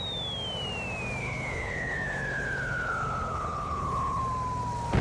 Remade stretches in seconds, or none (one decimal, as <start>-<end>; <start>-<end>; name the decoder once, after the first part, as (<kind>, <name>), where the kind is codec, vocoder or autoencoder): 1.2-4.2 (codec, HILCodec)

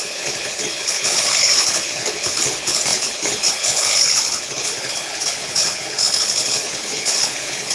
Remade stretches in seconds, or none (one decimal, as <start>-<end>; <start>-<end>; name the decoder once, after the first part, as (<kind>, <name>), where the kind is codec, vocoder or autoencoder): 0.0-7.7 (codec, HILCodec)